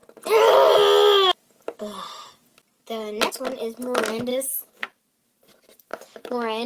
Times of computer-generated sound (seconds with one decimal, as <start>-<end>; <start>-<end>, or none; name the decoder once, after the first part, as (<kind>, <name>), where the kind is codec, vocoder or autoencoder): 4.3-5.0 (codec, DAC); 5.9-6.7